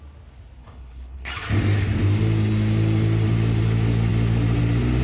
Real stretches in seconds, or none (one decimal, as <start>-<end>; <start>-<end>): 0.0-0.6; 1.3-5.0